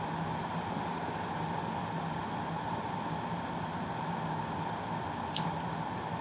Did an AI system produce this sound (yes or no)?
no